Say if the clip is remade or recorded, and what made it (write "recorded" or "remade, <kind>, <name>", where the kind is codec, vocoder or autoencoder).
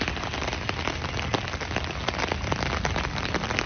recorded